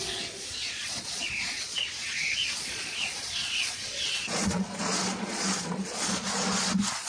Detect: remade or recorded remade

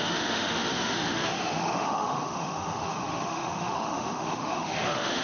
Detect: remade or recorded remade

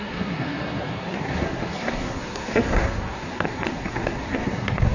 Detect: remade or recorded remade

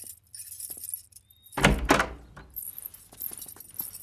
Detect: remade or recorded recorded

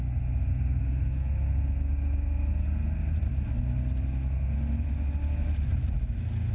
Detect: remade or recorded recorded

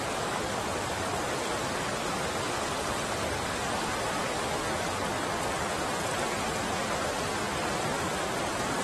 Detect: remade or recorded recorded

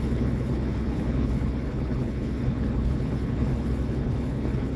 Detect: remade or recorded remade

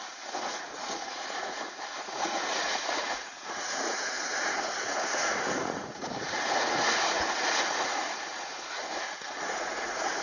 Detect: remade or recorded remade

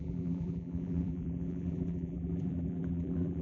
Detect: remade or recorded remade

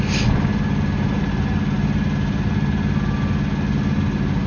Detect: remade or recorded recorded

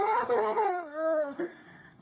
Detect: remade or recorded remade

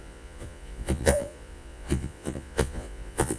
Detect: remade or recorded remade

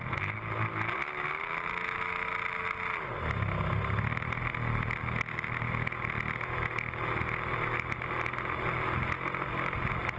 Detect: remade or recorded recorded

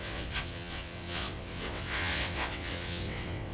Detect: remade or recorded remade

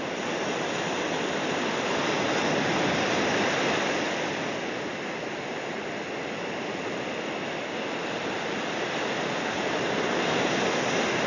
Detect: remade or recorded recorded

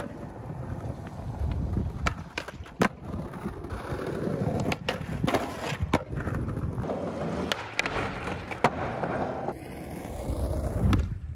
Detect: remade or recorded recorded